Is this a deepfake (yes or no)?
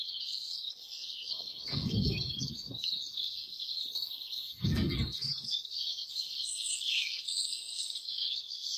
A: yes